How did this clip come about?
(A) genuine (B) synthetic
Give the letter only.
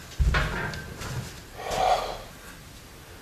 A